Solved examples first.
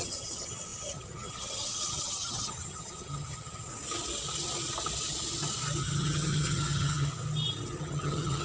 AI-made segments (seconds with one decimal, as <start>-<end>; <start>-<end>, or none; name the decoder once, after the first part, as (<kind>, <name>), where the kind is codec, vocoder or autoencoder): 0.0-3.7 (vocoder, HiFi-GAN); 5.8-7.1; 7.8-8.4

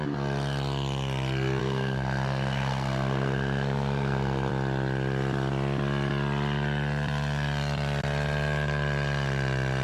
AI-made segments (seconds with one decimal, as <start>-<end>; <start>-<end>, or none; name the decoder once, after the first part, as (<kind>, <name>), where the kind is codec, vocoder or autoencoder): 1.6-4.5 (codec, SNAC)

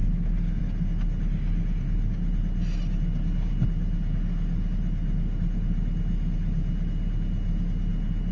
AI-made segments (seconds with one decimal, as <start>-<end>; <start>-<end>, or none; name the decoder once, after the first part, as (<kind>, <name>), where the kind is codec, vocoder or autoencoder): none

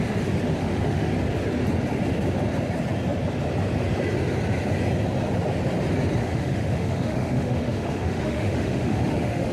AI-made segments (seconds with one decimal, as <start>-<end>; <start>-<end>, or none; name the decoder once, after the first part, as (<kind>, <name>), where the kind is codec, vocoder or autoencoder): 0.6-1.1 (autoencoder, DAC-VAE); 6.2-9.5